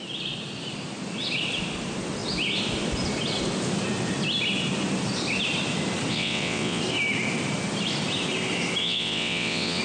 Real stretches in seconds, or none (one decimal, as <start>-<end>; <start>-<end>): 0.0-6.1; 6.8-8.8

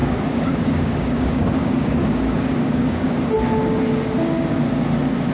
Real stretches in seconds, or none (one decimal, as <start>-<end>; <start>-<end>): 3.2-3.6; 4.5-5.3